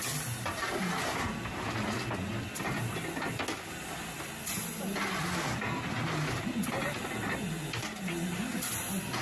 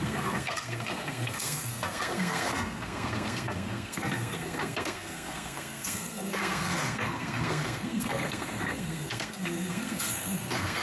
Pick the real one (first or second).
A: first